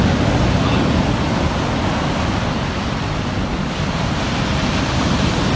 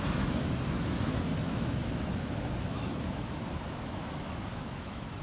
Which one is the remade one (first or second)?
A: second